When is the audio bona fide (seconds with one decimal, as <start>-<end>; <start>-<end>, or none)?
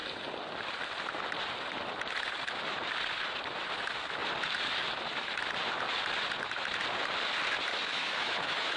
0.0-7.7